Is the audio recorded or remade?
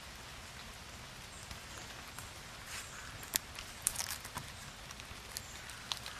recorded